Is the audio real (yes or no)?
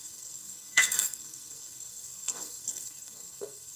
no